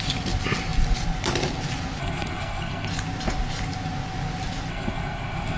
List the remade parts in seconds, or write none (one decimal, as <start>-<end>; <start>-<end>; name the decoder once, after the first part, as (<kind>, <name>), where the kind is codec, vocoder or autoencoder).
2.0-2.9 (codec, SNAC); 4.7-5.6